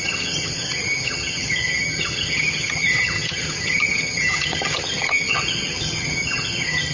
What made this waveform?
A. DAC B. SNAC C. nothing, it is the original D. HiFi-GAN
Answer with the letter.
D